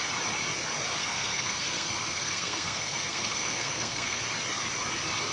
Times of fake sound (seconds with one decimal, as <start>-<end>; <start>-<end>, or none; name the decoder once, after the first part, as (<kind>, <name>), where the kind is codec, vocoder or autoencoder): 1.0-4.2 (codec, SNAC)